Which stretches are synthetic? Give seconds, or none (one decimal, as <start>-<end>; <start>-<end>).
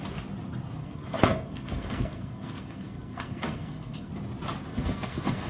0.8-4.1; 4.7-5.5